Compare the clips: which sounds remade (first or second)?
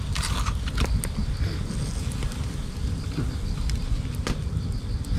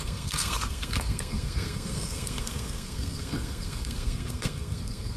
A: second